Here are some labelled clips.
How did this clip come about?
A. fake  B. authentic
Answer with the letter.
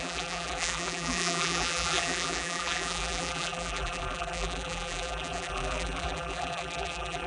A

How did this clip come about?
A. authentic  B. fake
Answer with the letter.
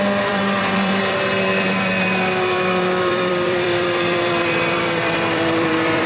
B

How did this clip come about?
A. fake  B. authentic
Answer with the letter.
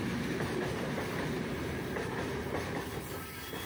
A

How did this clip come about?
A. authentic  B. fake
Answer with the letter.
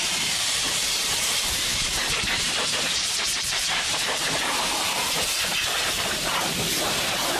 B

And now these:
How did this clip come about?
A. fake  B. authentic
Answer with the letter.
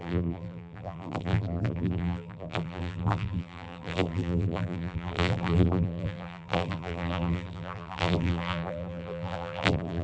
A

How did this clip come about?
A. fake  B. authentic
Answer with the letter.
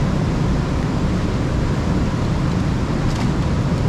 B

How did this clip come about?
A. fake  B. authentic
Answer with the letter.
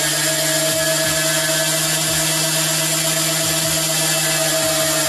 B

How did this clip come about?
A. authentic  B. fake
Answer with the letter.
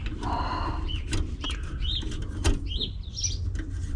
A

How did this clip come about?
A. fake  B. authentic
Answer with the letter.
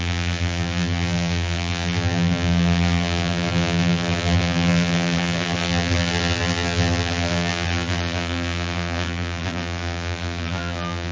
A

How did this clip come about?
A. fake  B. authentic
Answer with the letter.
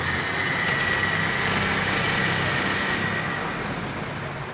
B